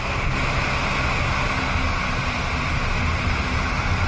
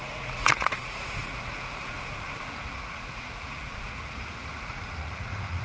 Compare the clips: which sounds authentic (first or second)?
first